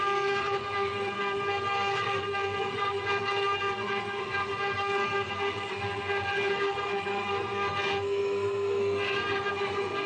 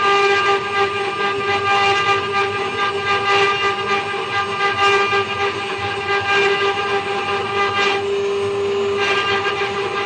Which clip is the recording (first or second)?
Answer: second